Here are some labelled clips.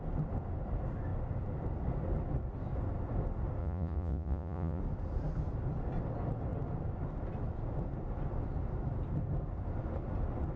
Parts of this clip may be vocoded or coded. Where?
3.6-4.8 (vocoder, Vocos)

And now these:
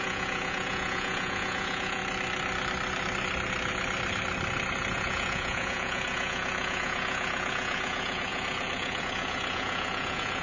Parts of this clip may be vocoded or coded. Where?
0.0-2.0 (vocoder, Vocos); 4.9-10.4

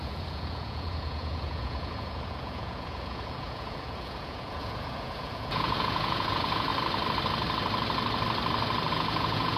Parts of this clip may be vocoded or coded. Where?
0.0-6.7 (vocoder, Vocos); 8.9-9.6

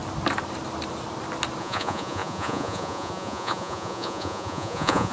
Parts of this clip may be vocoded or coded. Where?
1.6-5.1 (vocoder, Vocos)